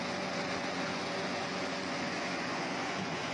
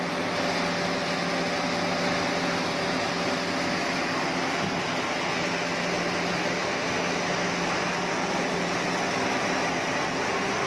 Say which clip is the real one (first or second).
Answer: second